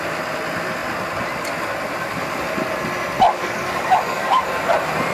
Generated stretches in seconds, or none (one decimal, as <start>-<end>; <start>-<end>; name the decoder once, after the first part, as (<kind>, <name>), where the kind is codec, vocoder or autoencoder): 3.3-4.5 (codec, DAC)